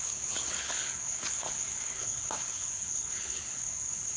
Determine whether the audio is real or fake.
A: fake